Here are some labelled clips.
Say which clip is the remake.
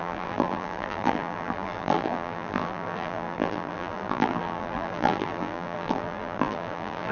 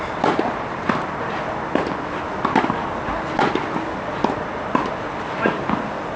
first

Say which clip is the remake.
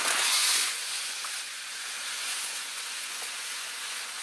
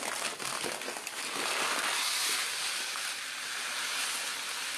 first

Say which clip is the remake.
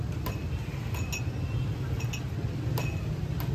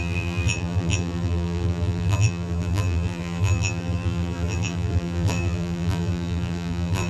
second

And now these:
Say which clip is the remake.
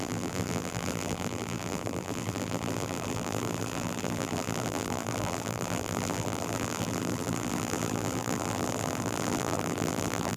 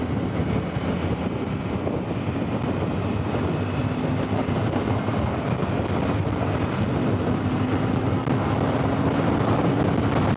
first